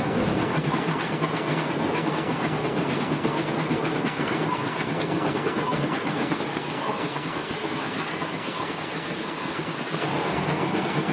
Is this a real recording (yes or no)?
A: no